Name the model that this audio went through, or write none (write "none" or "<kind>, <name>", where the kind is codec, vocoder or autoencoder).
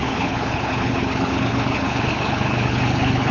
codec, HILCodec